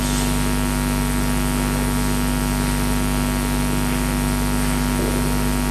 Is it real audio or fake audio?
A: real